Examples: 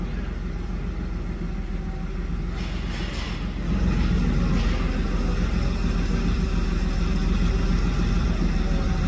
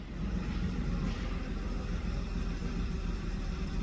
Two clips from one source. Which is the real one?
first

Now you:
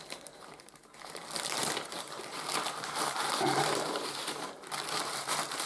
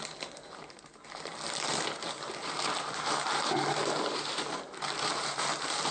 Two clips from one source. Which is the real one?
second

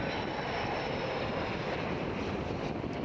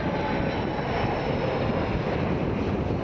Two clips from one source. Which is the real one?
second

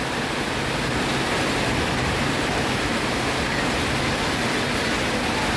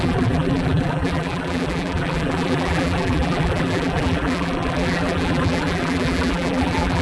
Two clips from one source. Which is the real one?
first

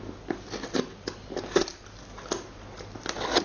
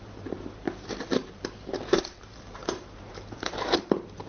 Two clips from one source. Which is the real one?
first